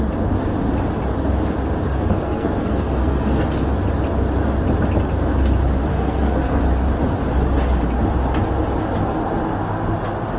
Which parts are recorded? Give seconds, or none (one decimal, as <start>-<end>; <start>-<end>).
0.0-1.9; 3.4-5.9; 6.6-10.4